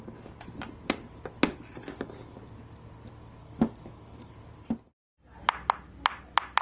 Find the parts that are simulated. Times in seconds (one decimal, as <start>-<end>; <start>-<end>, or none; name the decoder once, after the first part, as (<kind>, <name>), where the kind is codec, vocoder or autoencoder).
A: 1.8-2.4 (codec, DAC); 3.4-4.3